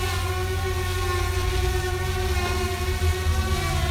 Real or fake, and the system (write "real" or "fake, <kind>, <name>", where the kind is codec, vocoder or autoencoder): real